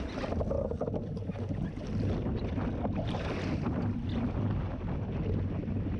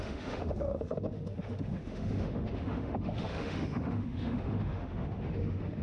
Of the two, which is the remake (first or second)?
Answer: second